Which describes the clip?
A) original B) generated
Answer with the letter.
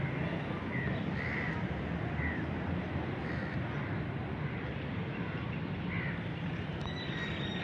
A